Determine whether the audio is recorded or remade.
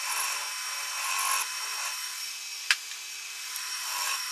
recorded